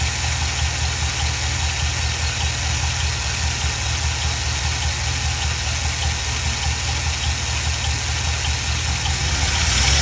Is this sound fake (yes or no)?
no